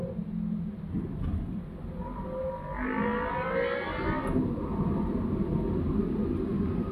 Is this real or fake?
real